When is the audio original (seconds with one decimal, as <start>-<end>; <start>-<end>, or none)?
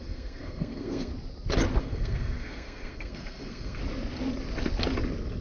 1.1-1.8; 3.8-5.4